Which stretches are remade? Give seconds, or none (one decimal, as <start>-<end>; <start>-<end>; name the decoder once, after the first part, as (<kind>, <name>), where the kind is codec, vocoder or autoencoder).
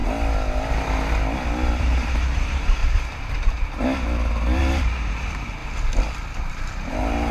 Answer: 1.8-2.8 (vocoder, BigVGAN v2); 4.6-5.6; 6.5-7.3